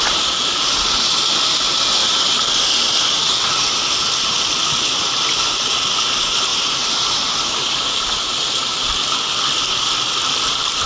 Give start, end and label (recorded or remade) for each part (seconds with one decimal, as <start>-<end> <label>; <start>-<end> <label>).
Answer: 0.0-2.0 recorded; 2.0-2.7 remade; 2.7-6.5 recorded; 6.5-7.1 remade; 7.1-10.9 recorded